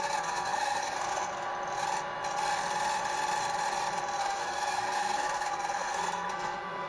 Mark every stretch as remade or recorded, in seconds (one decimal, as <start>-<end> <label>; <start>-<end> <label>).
0.0-1.5 remade; 1.5-4.2 recorded; 4.2-6.9 remade